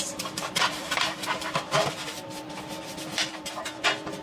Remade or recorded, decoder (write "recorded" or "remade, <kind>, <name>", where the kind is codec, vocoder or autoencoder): remade, vocoder, BigVGAN v2